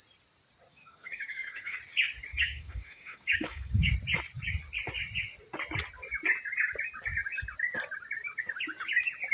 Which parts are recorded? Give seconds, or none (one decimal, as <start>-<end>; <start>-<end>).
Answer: 0.0-0.7; 1.8-2.3; 3.9-9.3